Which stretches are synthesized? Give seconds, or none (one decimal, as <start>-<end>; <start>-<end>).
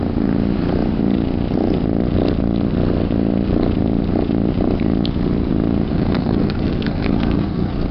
5.9-7.9